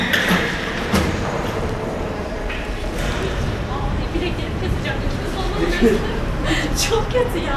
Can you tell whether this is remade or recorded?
remade